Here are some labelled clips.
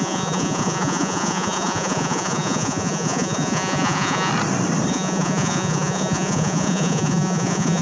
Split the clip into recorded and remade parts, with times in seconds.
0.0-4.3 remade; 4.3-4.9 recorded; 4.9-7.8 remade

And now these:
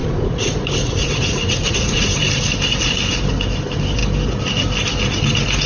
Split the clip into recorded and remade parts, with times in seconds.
0.0-2.0 remade; 2.0-5.7 recorded